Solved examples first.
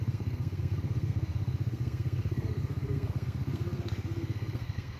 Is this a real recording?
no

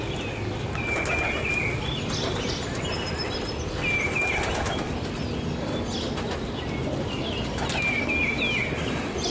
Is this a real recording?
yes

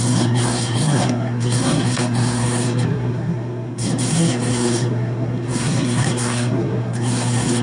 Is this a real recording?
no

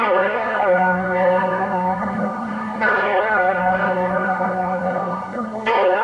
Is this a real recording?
no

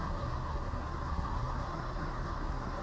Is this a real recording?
no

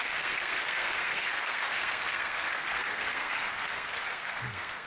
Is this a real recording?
no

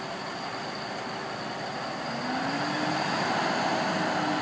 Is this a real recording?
yes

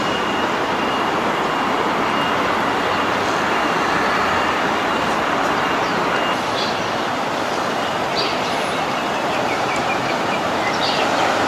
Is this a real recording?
yes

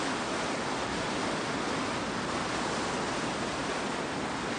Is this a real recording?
yes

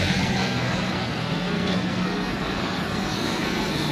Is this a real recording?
no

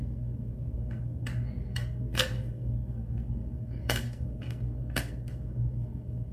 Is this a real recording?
no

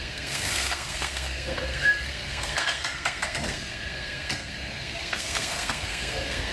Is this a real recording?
no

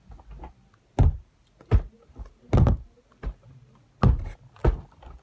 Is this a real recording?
yes